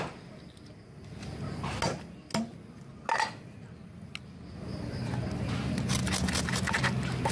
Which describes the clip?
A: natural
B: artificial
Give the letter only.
A